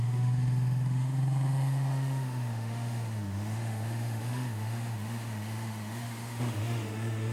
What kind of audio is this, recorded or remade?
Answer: remade